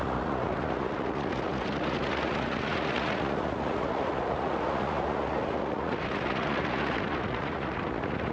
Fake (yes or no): yes